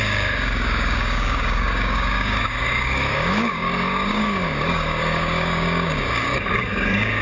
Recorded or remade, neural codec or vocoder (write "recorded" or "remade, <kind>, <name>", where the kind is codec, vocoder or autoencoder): remade, codec, DAC